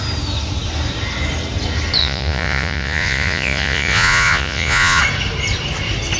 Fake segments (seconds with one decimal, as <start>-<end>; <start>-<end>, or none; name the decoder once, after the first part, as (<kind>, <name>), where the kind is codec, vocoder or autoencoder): 2.0-5.0 (vocoder, Vocos)